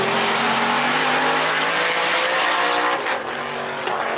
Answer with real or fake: real